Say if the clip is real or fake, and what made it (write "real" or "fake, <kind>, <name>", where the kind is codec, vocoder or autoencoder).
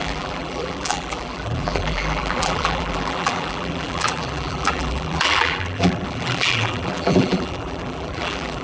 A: fake, vocoder, BigVGAN v2